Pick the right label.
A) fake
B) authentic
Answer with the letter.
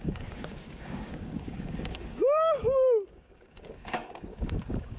A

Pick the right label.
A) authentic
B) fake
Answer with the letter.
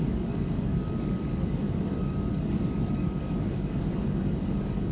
B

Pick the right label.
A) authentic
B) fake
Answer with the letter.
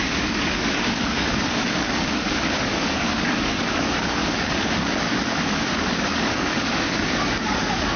B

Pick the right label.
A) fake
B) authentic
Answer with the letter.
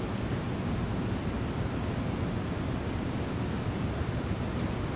B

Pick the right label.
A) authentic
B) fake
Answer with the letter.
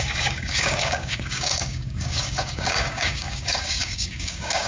B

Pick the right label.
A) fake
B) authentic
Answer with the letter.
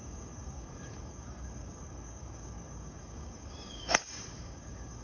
A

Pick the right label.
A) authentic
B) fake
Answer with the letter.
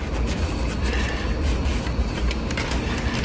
A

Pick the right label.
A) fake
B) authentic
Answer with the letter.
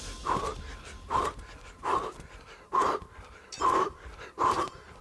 B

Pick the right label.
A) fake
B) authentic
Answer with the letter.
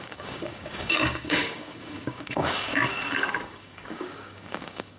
A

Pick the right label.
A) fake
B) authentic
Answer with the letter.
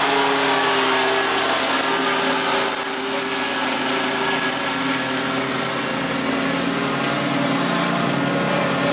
B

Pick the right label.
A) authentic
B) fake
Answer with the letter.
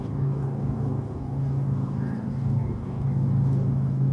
B